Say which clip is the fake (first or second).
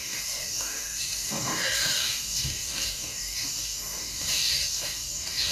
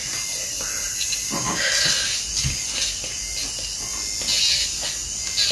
first